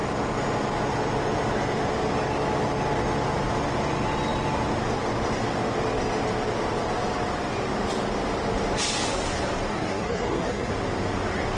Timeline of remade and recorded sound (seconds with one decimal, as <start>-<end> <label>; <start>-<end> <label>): 0.0-9.7 recorded; 9.7-10.7 remade; 10.7-11.6 recorded